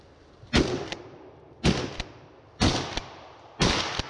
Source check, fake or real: real